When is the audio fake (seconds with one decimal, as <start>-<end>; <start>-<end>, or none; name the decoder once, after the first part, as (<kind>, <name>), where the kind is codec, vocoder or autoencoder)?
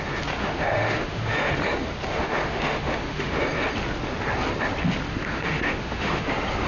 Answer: 0.4-1.5 (autoencoder, DAC-VAE); 2.1-3.4; 5.1-6.3